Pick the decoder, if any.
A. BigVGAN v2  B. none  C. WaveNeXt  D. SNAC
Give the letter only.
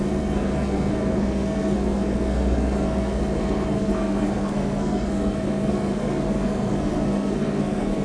D